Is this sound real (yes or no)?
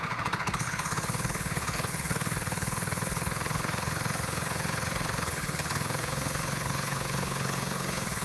no